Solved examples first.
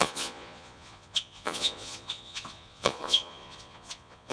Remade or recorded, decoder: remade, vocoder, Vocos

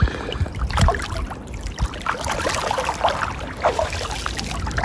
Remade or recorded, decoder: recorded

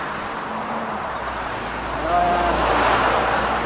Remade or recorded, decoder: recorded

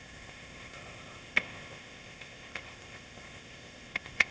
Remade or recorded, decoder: remade, codec, ZipCodec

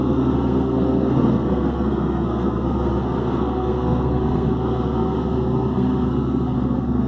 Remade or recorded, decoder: remade, codec, SNAC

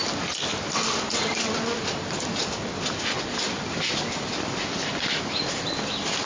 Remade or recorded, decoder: recorded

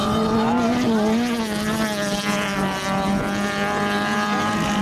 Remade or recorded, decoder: recorded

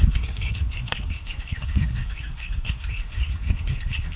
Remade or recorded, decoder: remade, codec, SNAC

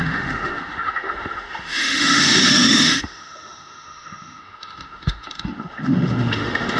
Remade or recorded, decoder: remade, autoencoder, DAC-VAE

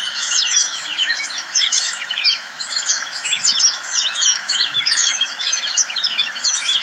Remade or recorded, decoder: remade, autoencoder, DAC-VAE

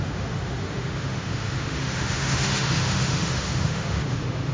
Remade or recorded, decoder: remade, autoencoder, DAC-VAE